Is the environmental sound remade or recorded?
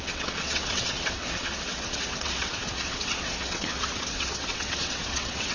remade